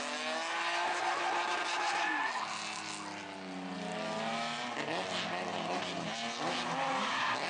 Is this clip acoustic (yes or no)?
yes